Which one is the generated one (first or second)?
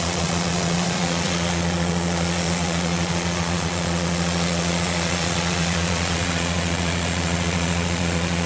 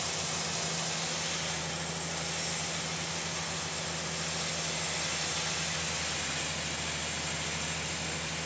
first